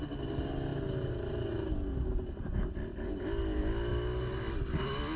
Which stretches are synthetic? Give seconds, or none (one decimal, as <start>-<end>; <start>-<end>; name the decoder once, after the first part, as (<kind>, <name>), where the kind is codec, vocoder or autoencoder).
none